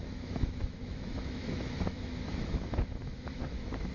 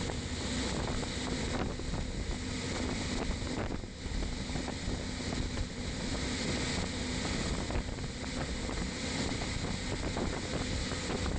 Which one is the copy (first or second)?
first